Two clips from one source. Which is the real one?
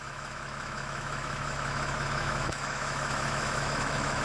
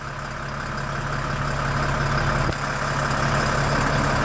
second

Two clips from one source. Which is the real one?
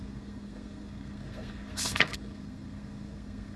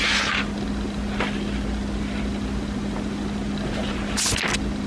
second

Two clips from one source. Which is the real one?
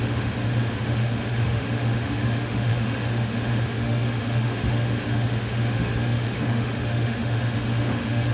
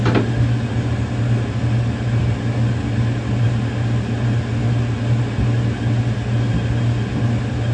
second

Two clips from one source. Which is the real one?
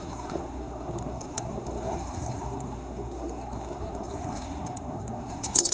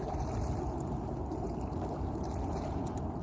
second